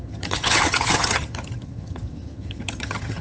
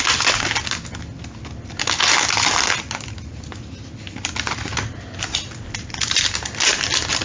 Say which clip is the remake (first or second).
first